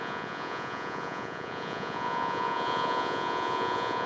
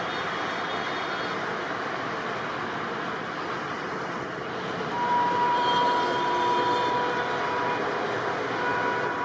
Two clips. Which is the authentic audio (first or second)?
second